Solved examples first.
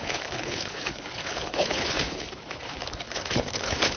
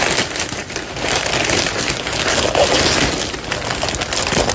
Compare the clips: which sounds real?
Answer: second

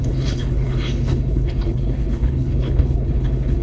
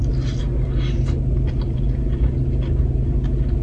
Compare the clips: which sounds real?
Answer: second